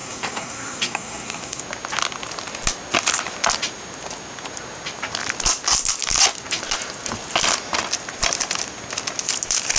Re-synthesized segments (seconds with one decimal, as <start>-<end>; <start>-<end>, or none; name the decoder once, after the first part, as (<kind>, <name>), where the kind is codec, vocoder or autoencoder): 0.0-1.6 (codec, SNAC)

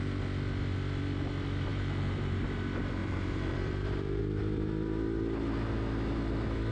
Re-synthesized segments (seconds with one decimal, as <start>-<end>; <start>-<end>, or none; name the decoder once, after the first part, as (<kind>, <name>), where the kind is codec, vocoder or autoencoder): 1.7-2.4 (vocoder, BigVGAN v2); 3.0-4.2

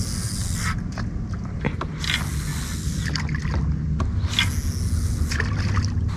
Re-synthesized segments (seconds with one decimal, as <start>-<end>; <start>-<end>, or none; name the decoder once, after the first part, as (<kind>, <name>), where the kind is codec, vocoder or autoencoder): none

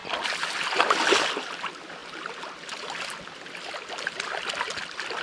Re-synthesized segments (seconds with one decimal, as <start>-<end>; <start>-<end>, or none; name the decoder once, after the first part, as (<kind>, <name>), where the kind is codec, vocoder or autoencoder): none

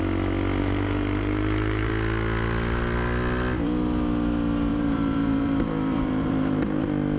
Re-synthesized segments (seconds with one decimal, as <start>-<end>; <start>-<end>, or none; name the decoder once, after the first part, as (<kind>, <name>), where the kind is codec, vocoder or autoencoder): 0.6-1.9 (vocoder, BigVGAN v2); 4.7-6.8

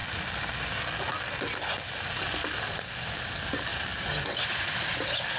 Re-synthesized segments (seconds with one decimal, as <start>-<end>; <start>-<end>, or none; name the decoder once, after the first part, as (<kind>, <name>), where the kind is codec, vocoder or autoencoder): none